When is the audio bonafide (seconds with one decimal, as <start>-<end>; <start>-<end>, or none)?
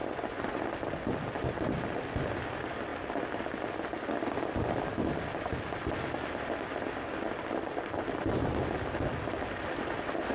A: 0.6-10.3